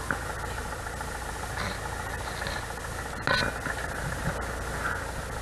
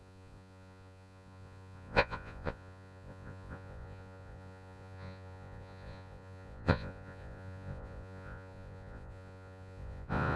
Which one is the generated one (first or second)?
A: second